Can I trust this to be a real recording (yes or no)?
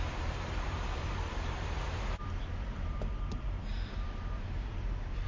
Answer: no